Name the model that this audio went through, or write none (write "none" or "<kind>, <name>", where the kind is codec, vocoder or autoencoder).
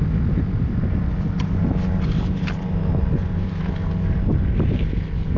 none